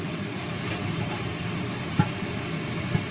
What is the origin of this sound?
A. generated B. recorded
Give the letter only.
B